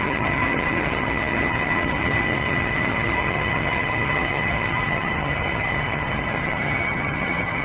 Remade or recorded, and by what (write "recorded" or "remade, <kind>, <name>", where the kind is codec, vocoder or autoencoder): remade, vocoder, HiFi-GAN